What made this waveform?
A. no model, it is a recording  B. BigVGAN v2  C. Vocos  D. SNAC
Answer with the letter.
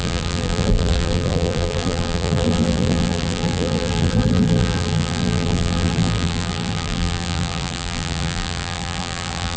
B